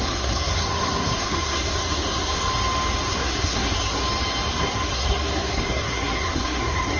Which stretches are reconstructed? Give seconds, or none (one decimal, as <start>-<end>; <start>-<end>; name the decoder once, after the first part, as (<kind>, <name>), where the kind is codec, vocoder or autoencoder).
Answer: 0.0-2.5 (codec, SNAC); 3.1-4.0; 4.5-7.0